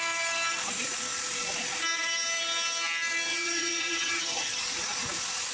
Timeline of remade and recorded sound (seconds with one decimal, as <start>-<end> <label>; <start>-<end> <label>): 0.0-3.3 recorded; 3.3-4.6 remade; 4.6-5.5 recorded